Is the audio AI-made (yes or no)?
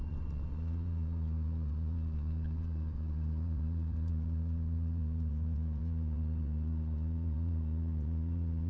yes